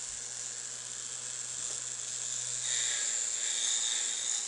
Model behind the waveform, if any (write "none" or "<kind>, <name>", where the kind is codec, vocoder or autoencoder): none